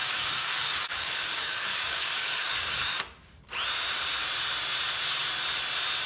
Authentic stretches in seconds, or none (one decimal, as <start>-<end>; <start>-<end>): 3.0-6.1